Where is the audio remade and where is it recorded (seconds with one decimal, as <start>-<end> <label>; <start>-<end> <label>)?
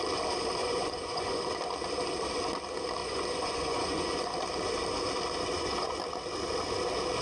0.0-0.6 recorded; 0.6-1.4 remade; 1.4-3.0 recorded; 3.0-4.3 remade; 4.3-5.5 recorded; 5.5-6.0 remade; 6.0-7.2 recorded